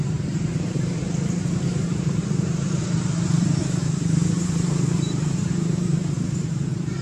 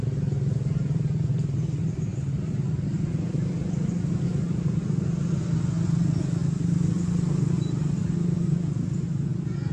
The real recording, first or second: second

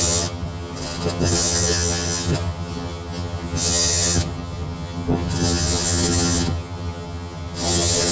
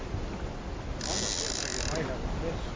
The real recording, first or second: second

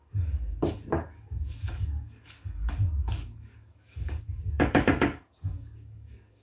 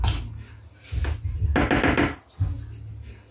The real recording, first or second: second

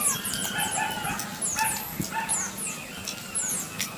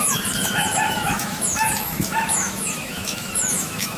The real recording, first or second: first